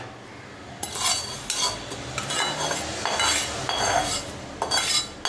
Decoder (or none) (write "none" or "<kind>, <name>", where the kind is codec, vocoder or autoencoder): none